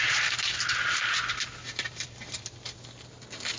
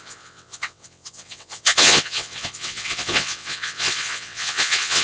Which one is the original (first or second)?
first